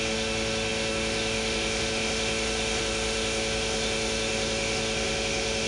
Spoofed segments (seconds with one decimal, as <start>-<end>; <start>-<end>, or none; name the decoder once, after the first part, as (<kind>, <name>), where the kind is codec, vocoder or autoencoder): 0.0-5.7 (autoencoder, DAC-VAE)